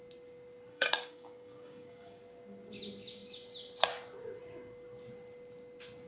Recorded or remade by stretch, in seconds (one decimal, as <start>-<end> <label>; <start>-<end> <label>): 0.0-0.7 recorded; 0.7-2.2 remade; 2.2-6.1 recorded